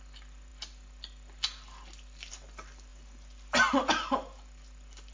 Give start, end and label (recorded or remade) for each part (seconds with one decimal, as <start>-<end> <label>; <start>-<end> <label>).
0.0-5.1 recorded